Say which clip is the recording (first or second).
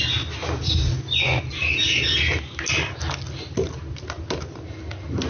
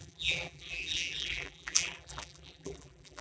first